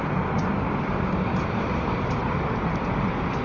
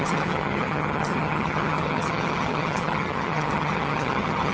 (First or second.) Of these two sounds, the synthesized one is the second